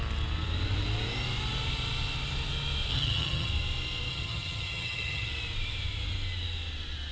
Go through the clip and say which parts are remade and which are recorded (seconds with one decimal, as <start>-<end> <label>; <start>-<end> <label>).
0.0-2.9 recorded; 2.9-3.5 remade; 3.5-4.1 recorded; 4.1-5.3 remade; 5.3-7.1 recorded